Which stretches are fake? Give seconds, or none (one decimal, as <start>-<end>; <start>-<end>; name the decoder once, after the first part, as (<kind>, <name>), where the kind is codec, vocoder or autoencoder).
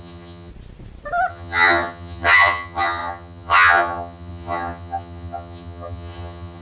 0.0-0.5 (vocoder, HiFi-GAN); 1.3-6.6